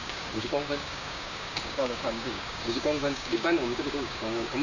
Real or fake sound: fake